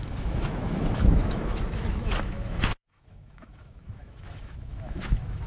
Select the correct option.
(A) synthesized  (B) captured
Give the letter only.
A